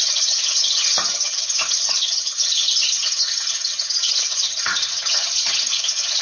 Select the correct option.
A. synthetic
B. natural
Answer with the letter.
A